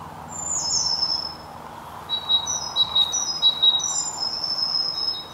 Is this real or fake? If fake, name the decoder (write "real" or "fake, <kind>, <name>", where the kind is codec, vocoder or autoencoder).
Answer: real